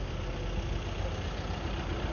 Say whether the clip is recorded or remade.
recorded